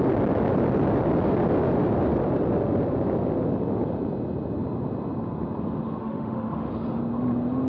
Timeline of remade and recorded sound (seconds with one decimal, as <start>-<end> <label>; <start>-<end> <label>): 0.0-6.0 recorded; 6.0-6.7 remade; 6.7-7.7 recorded